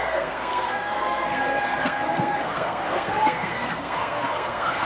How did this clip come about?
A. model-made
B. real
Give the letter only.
A